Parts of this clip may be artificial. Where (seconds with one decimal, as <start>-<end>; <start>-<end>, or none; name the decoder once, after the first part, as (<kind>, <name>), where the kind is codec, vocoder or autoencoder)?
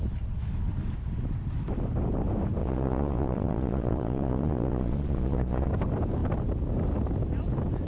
2.6-5.7 (vocoder, Vocos)